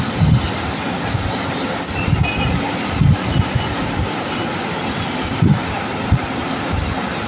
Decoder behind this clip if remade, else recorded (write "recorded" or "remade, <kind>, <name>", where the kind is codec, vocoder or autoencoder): recorded